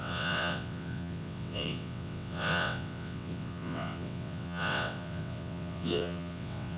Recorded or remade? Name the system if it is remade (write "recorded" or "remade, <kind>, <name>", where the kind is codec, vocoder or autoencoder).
remade, vocoder, WaveNeXt